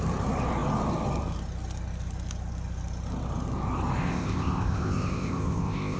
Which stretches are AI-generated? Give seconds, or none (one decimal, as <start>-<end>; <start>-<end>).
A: 4.0-6.0